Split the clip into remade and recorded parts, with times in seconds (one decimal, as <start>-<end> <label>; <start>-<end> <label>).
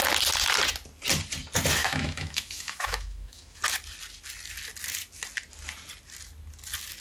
0.0-1.8 recorded; 1.8-3.6 remade; 3.6-7.0 recorded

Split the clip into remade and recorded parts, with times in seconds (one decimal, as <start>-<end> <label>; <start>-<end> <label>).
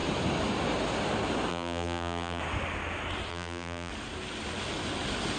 0.0-1.5 recorded; 1.5-2.4 remade; 2.4-3.3 recorded; 3.3-3.9 remade; 3.9-5.4 recorded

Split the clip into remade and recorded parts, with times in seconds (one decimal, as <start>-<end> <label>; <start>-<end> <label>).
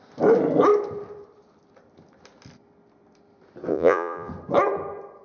0.0-3.7 recorded; 3.7-4.3 remade; 4.3-5.2 recorded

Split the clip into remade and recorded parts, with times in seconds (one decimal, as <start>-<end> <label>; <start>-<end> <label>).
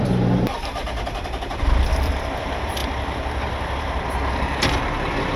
0.0-5.4 remade